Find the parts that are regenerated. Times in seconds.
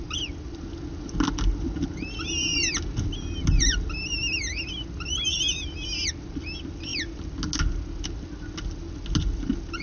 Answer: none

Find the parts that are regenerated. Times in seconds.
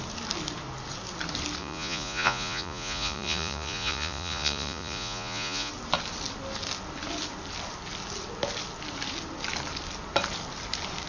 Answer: 1.6-5.7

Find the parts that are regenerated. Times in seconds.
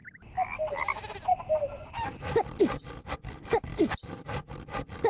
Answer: none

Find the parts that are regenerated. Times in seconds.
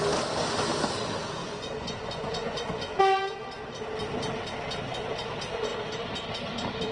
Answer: 1.4-3.0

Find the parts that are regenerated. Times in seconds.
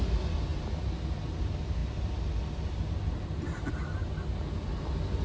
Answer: none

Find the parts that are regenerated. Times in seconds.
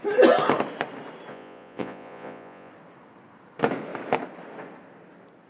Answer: 1.3-2.7